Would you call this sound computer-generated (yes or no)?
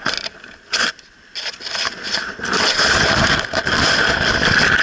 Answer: no